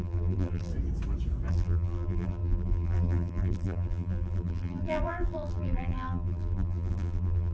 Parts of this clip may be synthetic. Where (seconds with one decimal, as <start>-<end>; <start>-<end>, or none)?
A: 0.0-0.7; 1.5-7.5